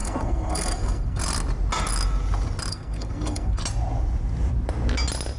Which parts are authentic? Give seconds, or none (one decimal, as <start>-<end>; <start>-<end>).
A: 1.2-2.7; 3.6-5.4